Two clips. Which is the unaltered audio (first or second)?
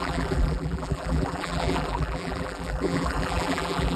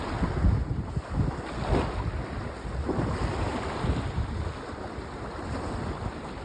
second